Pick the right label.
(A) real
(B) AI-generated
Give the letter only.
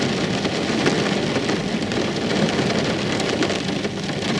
A